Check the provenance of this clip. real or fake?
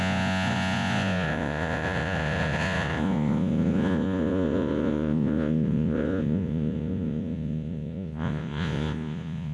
fake